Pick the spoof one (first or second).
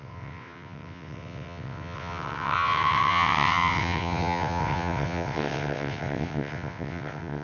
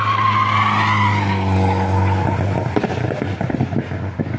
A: first